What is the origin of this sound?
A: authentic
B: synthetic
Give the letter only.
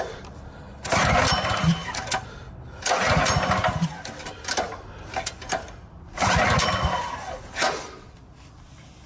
A